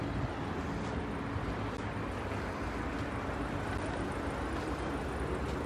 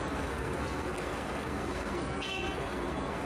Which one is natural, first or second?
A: first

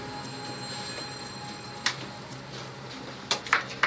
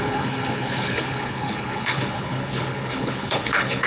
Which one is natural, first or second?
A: first